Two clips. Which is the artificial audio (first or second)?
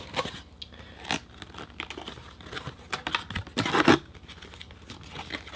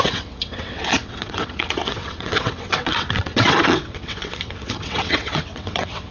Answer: second